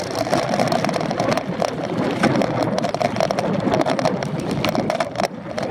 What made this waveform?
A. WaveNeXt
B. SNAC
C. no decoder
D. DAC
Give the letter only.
C